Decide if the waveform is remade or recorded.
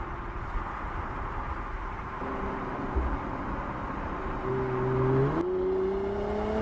recorded